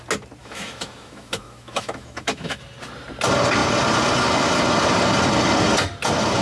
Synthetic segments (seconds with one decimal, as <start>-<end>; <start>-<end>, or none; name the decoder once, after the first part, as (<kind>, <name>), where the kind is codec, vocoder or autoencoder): 0.4-2.6 (autoencoder, DAC-VAE)